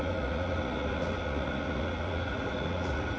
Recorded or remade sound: remade